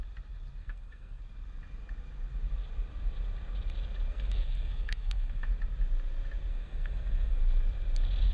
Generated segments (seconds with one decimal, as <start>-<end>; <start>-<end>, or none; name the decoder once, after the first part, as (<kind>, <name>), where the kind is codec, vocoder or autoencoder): 0.6-1.2 (codec, SNAC); 4.1-5.5; 6.5-7.4